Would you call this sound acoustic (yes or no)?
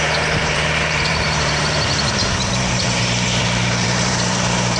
no